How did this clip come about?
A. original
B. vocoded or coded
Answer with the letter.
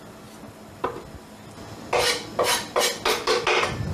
A